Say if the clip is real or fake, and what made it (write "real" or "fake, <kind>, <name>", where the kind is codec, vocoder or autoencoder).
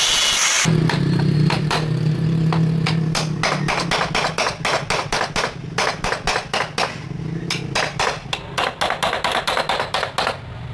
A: real